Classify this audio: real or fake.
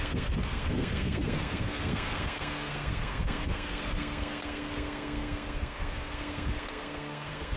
fake